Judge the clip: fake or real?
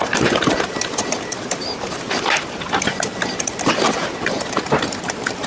fake